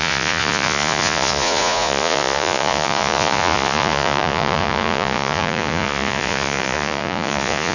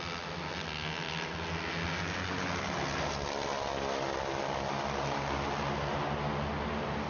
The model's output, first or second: first